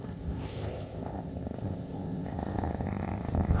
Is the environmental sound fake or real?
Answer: fake